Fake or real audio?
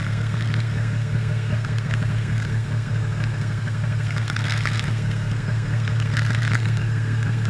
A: fake